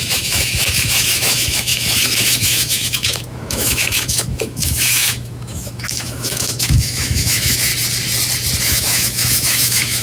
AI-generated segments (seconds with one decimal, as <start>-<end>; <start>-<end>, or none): 0.0-7.7; 8.6-10.0